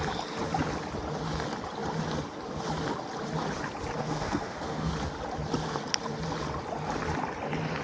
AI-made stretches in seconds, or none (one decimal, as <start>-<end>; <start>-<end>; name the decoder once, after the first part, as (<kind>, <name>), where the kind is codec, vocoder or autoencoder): 4.0-4.9 (codec, SNAC)